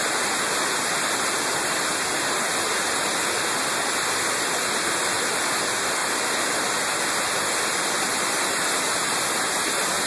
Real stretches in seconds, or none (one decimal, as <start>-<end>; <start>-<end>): 0.0-10.1